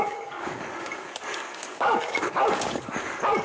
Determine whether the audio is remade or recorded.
remade